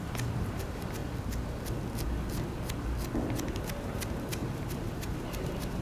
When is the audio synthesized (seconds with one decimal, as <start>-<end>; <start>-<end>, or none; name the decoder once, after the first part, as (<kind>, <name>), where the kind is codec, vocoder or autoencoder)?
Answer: 0.0-1.0 (vocoder, BigVGAN v2); 3.6-5.8